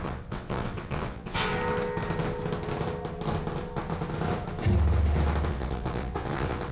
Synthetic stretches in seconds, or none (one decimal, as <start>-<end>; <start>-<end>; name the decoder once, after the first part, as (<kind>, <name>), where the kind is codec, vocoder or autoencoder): 0.0-1.5 (vocoder, WaveNeXt); 5.5-6.7

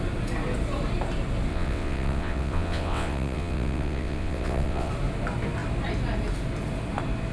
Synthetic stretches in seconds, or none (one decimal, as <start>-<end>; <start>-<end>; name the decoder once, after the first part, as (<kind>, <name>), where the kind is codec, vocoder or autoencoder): 1.5-4.9 (vocoder, WaveNeXt)

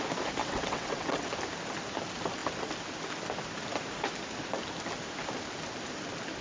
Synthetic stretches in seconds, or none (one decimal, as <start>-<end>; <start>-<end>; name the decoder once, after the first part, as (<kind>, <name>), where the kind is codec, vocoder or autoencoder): 0.4-1.3 (vocoder, WaveNeXt)

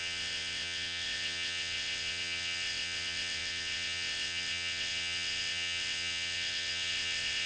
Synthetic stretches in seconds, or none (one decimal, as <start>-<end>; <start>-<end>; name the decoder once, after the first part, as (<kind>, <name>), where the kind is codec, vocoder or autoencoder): 0.0-7.5 (vocoder, WaveNeXt)

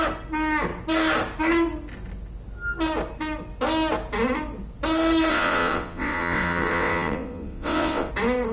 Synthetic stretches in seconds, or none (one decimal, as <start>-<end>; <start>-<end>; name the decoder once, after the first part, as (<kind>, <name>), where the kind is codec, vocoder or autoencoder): 5.3-8.1 (vocoder, WaveNeXt)

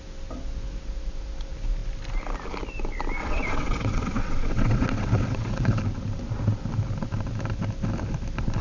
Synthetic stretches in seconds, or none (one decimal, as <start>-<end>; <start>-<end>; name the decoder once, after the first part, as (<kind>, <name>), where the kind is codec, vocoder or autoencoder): 3.2-5.8 (vocoder, WaveNeXt)

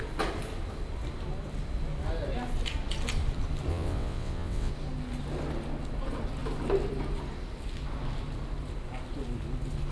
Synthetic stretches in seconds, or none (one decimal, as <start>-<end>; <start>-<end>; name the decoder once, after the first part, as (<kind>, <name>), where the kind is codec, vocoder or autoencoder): 3.7-4.7 (vocoder, WaveNeXt)

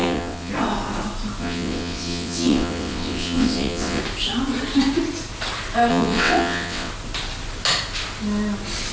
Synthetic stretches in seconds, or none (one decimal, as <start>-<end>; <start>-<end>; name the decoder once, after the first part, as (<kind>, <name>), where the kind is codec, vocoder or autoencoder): 0.0-0.5 (vocoder, WaveNeXt); 1.4-4.0; 5.9-6.9